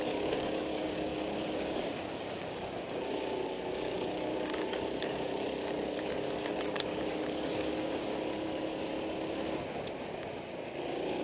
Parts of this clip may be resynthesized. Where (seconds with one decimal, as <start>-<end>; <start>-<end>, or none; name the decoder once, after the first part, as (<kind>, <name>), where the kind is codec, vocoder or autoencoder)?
0.0-8.9 (codec, DAC); 10.1-11.2